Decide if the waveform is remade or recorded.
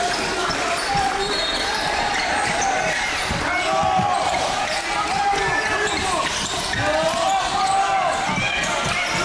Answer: recorded